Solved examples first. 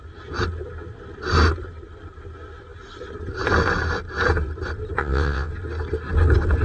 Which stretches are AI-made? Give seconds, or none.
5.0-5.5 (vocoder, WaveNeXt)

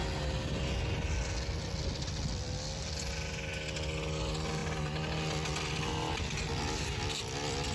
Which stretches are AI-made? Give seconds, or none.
none

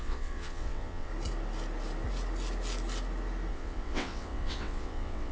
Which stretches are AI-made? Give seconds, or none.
0.0-1.1 (vocoder, WaveNeXt); 3.5-5.3

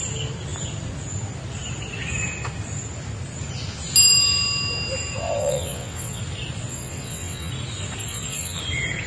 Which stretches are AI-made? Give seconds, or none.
5.4-6.2 (vocoder, WaveNeXt); 6.7-7.5; 8.0-8.6

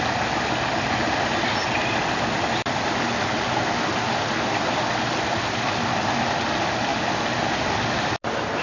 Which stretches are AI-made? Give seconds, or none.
none

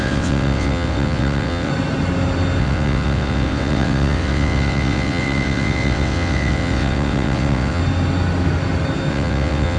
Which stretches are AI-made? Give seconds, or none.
0.0-1.7 (vocoder, WaveNeXt); 2.6-7.8; 9.1-9.8